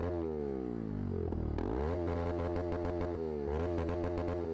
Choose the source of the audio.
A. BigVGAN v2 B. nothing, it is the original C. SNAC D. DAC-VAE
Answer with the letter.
B